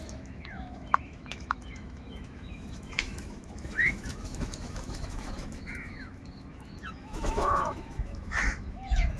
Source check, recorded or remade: remade